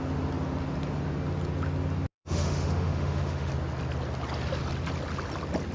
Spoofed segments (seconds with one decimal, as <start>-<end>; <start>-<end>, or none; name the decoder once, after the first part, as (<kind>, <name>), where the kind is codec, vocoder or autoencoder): 2.1-3.5 (autoencoder, DAC-VAE)